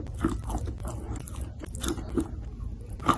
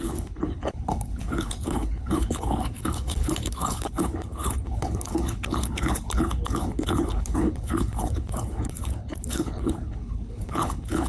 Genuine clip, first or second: first